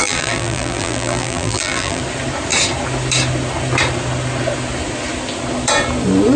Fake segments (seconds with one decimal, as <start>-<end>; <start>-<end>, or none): 0.0-2.0